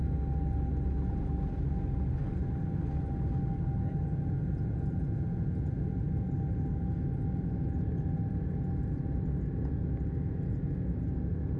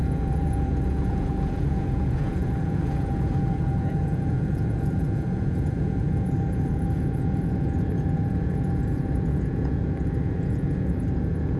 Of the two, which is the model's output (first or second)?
second